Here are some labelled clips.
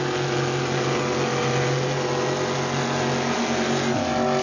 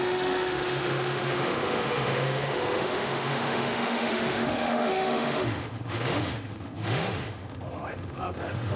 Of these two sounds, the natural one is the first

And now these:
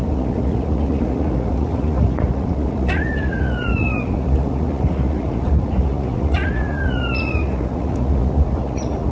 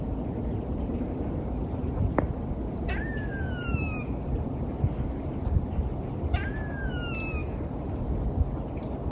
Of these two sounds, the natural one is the second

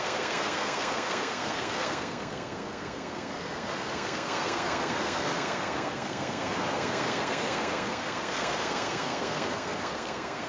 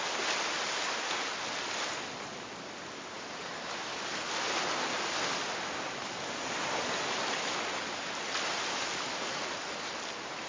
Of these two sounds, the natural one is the second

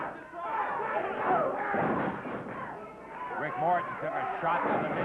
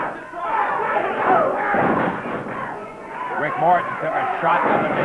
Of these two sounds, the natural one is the first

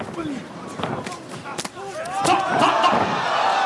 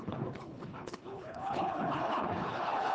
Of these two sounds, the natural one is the first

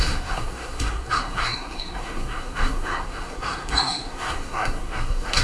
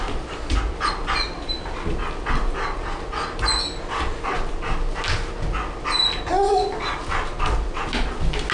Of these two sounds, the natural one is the second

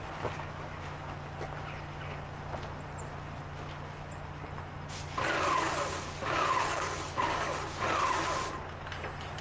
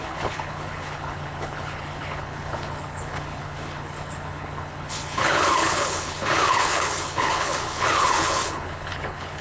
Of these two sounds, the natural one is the first